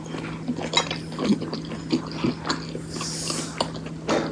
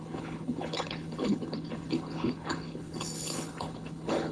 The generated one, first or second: second